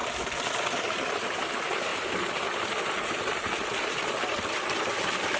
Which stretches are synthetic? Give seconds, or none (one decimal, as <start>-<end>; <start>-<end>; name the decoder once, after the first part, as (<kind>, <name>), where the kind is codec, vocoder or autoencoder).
none